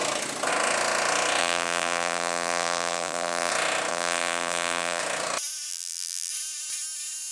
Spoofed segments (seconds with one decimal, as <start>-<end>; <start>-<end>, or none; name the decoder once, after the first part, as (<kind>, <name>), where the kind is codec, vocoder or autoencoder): 1.4-3.5 (vocoder, BigVGAN v2); 3.9-5.0; 5.7-6.3